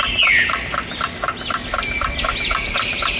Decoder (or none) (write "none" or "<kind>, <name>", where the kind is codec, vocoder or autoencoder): none